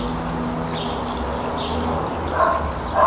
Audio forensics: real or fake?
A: real